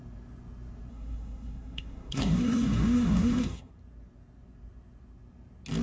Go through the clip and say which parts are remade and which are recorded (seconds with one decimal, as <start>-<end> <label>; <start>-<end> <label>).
0.0-0.9 recorded; 0.9-3.7 remade; 3.7-5.8 recorded